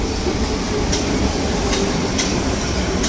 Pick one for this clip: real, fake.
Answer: real